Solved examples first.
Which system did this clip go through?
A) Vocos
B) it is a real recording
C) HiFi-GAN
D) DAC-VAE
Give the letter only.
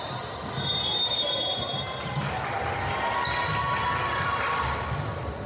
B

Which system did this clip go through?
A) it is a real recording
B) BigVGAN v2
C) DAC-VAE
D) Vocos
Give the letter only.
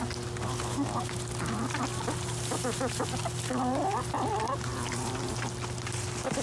A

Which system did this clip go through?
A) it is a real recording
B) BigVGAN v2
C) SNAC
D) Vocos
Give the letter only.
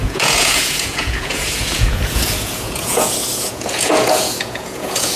D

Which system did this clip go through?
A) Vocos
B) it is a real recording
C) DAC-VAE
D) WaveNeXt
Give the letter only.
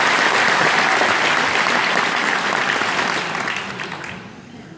B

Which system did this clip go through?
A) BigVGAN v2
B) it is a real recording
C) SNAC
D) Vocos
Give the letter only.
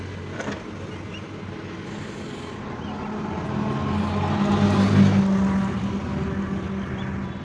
B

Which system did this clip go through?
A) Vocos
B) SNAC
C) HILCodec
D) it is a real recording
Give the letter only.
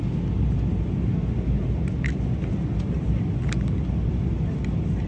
D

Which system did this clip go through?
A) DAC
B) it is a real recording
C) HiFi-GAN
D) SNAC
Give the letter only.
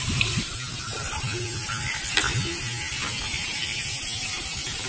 B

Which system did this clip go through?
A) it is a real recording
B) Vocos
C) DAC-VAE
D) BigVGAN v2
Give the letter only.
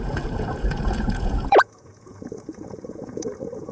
B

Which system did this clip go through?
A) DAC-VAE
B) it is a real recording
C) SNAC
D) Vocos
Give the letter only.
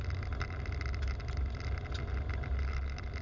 B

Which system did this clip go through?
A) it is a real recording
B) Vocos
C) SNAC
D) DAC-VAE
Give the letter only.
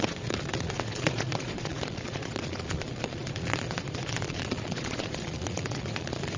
B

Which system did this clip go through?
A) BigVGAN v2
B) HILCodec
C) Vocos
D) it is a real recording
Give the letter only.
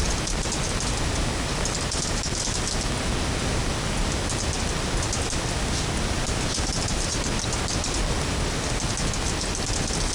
D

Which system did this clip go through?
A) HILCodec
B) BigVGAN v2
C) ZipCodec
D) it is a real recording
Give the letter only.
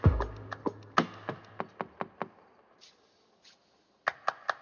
D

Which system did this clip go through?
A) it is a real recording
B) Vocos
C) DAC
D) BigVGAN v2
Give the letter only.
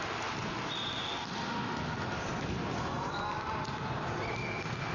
A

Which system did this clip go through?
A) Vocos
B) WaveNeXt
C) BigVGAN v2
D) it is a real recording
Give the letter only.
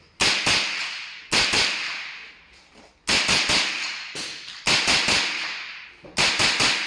D